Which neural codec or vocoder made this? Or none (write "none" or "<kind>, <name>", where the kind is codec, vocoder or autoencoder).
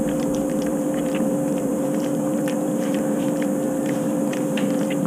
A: vocoder, BigVGAN v2